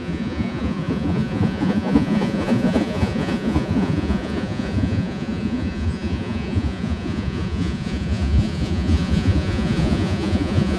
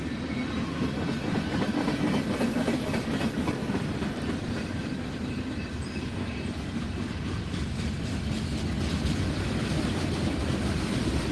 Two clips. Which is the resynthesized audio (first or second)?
first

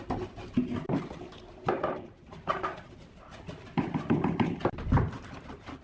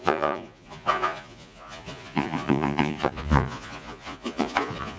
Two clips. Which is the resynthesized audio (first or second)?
second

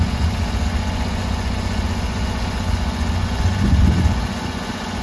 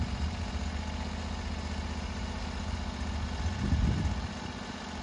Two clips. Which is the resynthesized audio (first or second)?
first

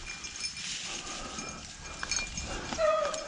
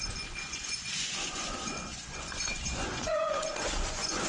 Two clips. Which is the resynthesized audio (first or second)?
second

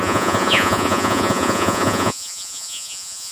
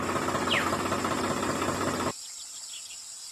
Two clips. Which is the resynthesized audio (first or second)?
first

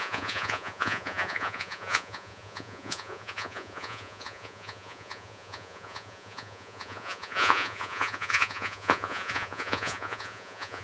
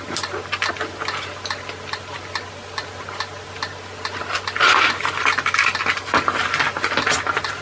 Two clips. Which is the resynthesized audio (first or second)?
first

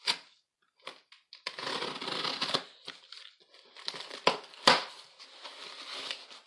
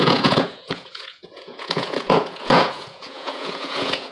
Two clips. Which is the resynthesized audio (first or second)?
second